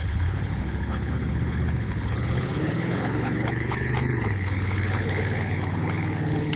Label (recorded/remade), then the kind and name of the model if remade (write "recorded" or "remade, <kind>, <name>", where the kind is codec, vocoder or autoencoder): remade, codec, HILCodec